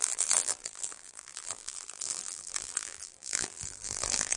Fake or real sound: fake